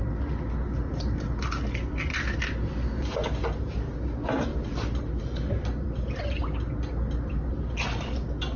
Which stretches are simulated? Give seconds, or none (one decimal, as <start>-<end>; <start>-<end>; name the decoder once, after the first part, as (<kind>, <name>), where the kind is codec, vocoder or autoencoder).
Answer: none